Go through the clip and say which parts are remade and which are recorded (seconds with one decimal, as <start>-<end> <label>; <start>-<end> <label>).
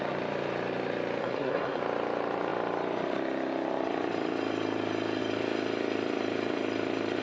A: 0.0-1.2 recorded; 1.2-1.8 remade; 1.8-7.2 recorded